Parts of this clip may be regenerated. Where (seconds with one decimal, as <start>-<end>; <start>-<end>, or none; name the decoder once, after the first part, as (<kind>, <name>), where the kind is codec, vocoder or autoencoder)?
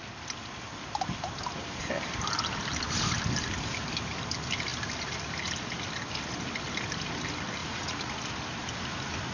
7.6-8.1 (vocoder, Vocos)